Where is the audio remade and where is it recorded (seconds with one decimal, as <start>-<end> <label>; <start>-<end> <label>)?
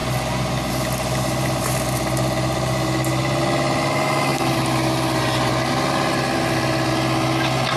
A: 0.0-7.8 recorded